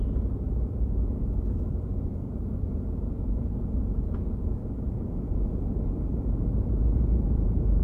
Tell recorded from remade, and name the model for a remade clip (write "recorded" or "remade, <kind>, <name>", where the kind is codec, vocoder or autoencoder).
remade, vocoder, Vocos